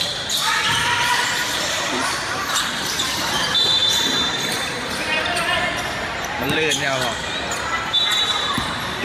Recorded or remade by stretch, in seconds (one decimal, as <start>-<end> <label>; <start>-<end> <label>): 0.0-0.4 remade; 0.4-1.0 recorded; 1.0-9.0 remade